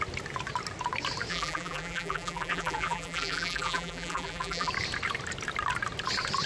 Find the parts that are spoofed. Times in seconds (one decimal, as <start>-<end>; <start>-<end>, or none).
1.3-4.7